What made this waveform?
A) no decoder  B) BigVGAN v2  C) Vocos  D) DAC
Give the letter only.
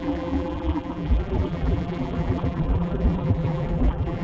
B